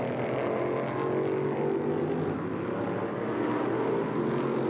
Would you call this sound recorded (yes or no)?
yes